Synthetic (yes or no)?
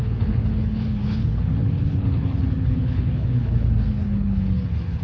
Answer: yes